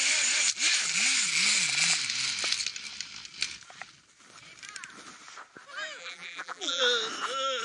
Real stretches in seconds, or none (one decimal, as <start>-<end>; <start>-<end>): 0.0-6.0; 6.8-7.6